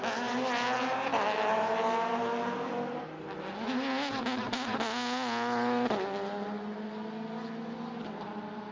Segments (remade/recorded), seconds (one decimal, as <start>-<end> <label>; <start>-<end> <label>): 0.0-8.7 recorded